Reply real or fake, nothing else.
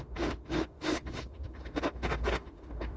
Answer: fake